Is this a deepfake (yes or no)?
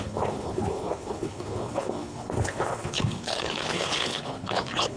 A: yes